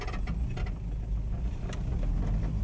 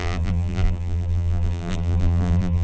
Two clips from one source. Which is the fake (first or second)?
second